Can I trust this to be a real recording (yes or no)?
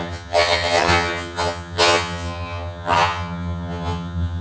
no